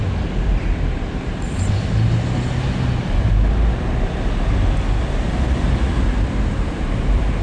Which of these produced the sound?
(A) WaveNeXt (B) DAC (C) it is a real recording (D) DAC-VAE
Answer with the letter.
C